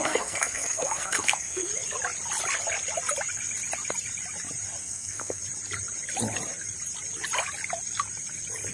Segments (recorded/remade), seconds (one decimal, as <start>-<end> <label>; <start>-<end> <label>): 0.0-1.7 remade; 1.7-4.8 recorded; 4.8-5.4 remade; 5.4-8.7 recorded